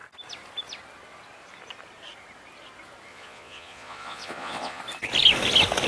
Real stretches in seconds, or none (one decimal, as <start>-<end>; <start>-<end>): 0.0-3.1; 4.8-5.9